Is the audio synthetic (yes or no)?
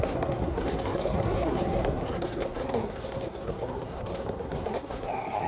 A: yes